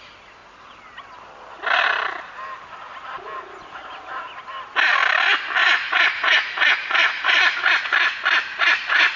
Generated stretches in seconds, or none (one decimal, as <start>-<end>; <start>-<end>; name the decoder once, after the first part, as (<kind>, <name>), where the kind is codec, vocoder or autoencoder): 5.6-7.7 (vocoder, Vocos); 8.5-9.2